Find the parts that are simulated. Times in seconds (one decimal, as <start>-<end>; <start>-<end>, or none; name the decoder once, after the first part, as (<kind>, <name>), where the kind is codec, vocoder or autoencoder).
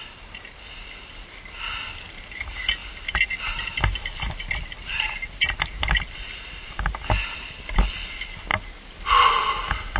none